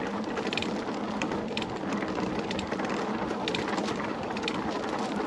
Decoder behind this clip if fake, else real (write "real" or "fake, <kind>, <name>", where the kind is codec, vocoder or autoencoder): real